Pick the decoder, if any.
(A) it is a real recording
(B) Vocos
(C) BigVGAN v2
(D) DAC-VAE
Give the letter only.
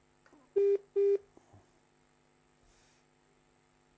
A